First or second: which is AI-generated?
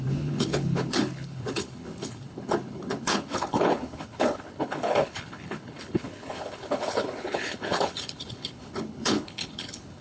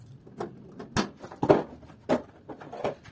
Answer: first